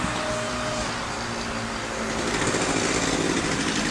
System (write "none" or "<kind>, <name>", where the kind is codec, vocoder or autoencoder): none